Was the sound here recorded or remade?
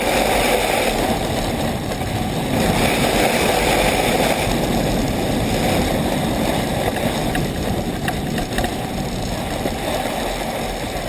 recorded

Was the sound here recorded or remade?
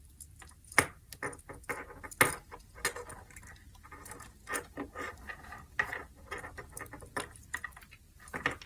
recorded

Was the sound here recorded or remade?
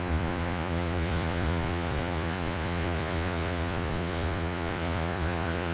remade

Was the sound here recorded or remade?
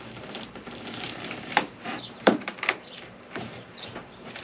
remade